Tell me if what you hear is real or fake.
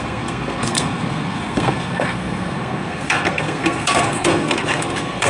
fake